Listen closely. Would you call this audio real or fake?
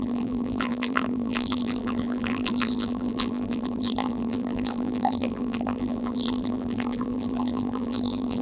fake